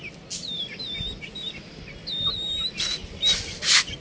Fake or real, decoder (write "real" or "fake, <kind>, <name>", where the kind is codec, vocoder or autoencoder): real